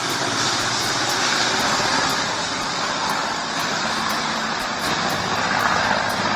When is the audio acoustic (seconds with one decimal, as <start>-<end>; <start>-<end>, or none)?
1.4-6.4